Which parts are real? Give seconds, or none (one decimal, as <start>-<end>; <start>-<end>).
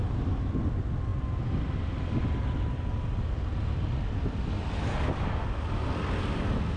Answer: 0.0-6.8